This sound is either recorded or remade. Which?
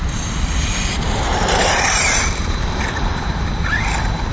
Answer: remade